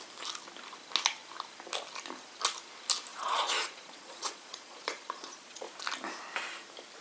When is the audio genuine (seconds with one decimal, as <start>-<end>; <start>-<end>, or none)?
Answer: 0.0-3.1; 5.7-7.0